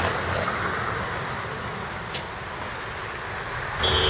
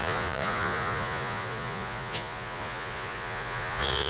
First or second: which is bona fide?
first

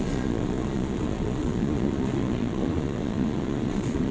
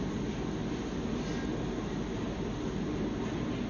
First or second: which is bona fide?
second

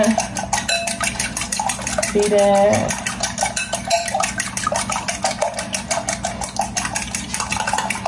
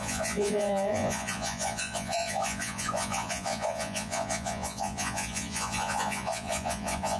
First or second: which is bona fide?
first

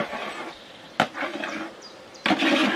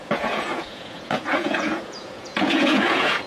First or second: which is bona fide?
first